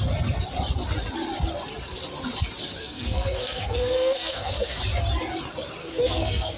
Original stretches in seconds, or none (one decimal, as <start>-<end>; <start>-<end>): 0.0-2.8; 4.8-5.8